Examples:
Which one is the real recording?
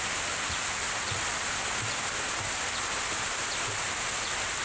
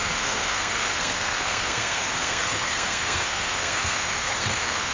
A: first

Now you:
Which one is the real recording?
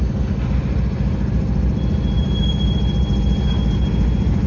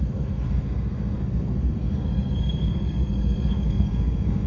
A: first